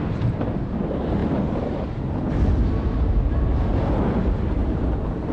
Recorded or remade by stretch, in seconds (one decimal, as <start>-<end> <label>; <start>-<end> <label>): 0.0-1.2 recorded; 1.2-2.1 remade; 2.1-4.6 recorded; 4.6-5.3 remade